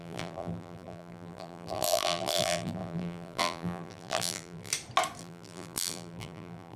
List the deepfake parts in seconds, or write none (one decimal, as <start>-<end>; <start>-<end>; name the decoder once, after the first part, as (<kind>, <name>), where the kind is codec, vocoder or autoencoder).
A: 0.0-4.7 (vocoder, BigVGAN v2); 5.2-6.8